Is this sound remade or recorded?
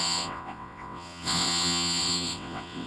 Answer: remade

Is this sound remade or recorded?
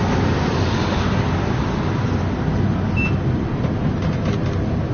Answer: recorded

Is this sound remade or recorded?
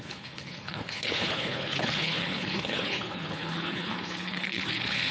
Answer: remade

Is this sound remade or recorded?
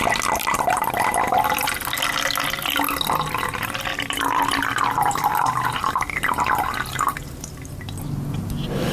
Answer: recorded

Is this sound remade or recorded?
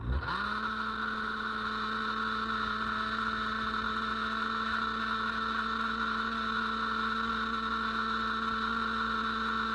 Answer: recorded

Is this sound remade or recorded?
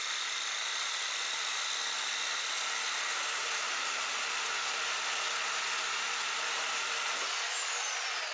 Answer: recorded